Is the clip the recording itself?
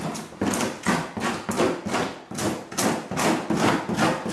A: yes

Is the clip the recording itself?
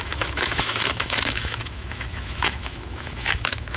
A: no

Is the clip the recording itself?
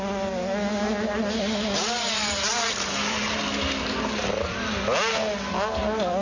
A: yes